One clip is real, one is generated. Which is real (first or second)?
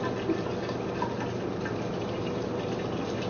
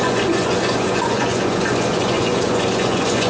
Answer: first